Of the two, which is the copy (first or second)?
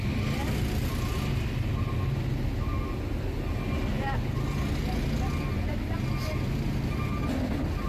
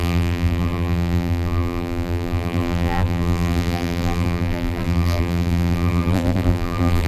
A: second